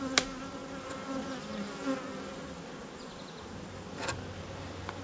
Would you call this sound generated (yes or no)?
no